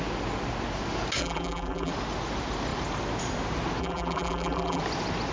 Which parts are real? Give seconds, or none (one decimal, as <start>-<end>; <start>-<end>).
0.0-1.2; 1.9-3.8; 4.8-5.3